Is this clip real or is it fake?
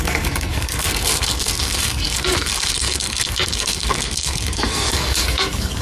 fake